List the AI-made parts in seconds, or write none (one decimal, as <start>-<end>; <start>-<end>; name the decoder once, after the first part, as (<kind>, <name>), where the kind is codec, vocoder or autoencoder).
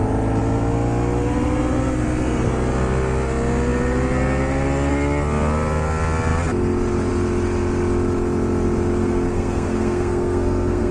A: 9.0-10.9 (codec, SNAC)